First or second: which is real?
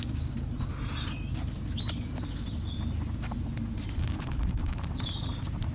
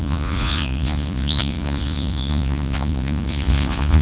first